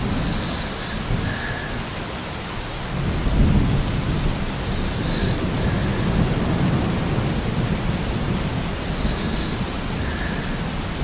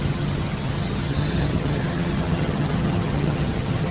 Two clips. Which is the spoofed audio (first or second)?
second